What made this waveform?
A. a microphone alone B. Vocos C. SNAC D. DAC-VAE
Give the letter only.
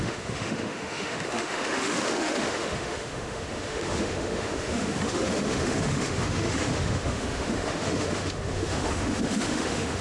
D